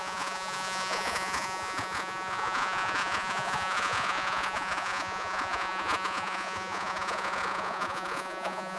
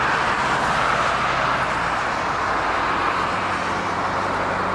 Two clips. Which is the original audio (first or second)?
second